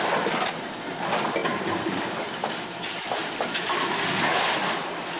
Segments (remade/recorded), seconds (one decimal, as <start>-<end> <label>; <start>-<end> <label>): 0.0-5.2 recorded